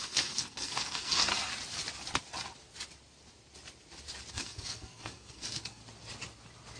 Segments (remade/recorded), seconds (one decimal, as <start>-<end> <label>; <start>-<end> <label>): 0.0-1.3 remade; 1.3-4.3 recorded; 4.3-5.8 remade; 5.8-6.8 recorded